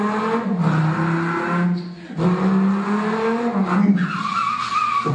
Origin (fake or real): real